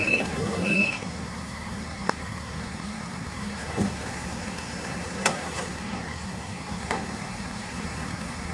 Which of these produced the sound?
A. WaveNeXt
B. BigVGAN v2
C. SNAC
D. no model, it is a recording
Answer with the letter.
C